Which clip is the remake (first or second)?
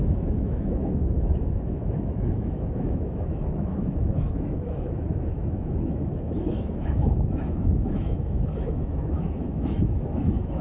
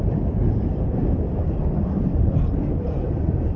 first